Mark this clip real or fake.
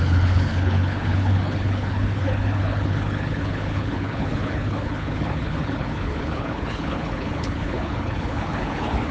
fake